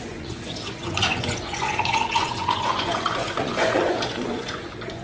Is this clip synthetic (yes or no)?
yes